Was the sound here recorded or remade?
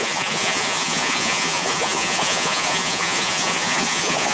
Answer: remade